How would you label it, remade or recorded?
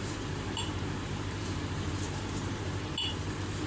remade